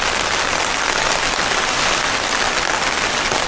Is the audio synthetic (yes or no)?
no